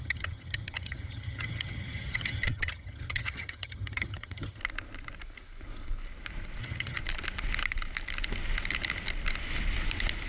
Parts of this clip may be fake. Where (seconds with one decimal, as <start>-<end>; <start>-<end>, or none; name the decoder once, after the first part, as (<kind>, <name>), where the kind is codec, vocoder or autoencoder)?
0.0-4.6 (vocoder, HiFi-GAN); 6.6-7.0